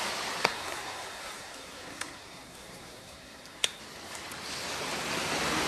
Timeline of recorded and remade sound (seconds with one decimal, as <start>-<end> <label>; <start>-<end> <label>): 0.0-0.4 recorded; 0.4-3.8 remade; 3.8-5.7 recorded